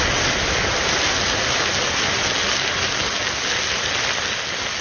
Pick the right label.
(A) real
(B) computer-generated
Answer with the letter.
A